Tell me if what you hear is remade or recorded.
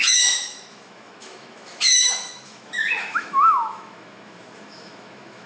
remade